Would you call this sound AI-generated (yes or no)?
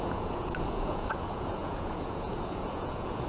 yes